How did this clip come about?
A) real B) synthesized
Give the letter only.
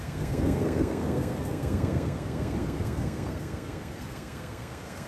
B